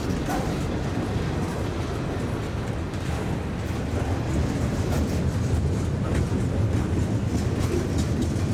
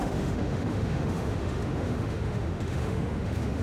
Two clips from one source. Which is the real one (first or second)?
first